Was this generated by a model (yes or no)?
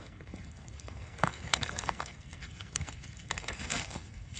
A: yes